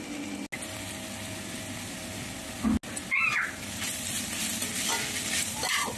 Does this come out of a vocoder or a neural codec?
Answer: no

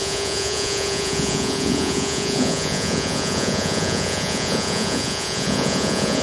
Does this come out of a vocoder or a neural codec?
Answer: yes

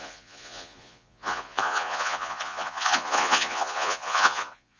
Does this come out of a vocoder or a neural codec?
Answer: yes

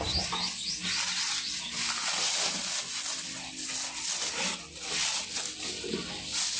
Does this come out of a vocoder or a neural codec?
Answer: no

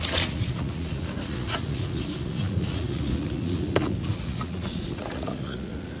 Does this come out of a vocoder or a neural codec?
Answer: yes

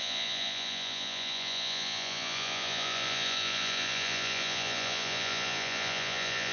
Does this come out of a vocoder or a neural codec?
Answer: yes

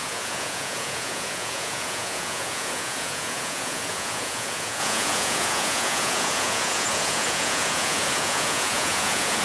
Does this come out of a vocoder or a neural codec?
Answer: yes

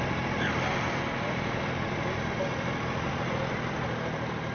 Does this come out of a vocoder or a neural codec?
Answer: no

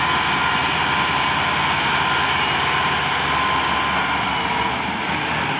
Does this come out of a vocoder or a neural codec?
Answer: no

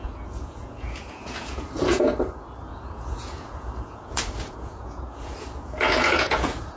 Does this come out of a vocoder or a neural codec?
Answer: yes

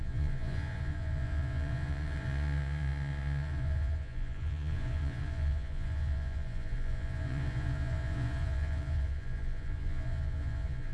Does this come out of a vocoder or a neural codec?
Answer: yes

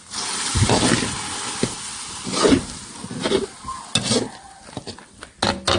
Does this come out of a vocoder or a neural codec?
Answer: no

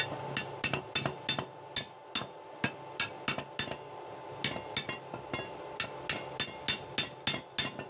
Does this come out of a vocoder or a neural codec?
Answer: no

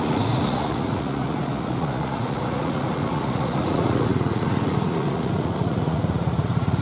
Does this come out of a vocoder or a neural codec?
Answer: yes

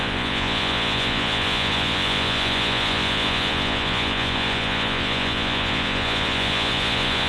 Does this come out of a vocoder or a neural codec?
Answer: yes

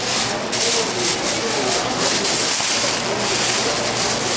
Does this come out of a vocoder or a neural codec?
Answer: no